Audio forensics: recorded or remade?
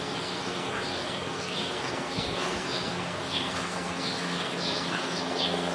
remade